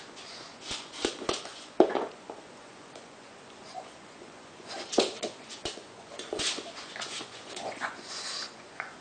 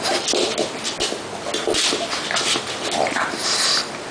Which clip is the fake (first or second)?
first